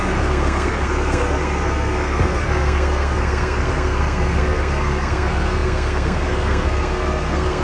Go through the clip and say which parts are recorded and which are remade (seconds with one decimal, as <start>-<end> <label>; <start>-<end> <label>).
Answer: 0.0-7.6 remade